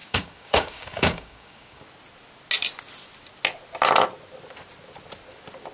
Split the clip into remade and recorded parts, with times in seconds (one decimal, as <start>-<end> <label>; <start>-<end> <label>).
0.0-1.8 remade; 1.8-5.7 recorded